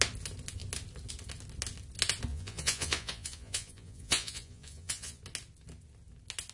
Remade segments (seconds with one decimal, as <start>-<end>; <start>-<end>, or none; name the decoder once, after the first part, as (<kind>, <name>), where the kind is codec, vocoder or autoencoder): 2.3-5.2 (vocoder, Vocos)